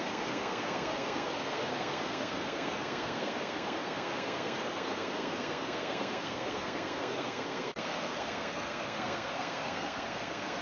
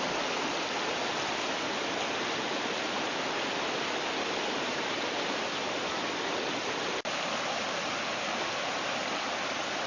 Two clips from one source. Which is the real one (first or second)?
second